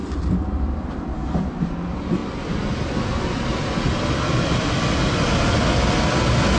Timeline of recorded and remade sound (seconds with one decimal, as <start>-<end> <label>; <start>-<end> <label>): 0.0-6.6 recorded